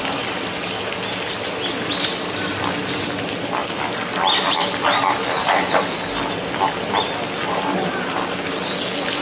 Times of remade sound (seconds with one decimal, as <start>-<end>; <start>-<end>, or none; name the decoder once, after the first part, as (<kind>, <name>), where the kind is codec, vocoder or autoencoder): none